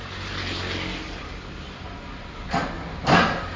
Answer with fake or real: real